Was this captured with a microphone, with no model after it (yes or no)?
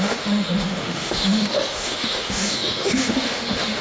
no